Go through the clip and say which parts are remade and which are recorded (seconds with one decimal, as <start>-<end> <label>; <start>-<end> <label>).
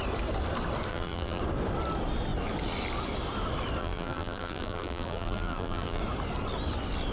0.0-0.9 recorded; 0.9-1.4 remade; 1.4-3.8 recorded; 3.8-6.0 remade; 6.0-7.1 recorded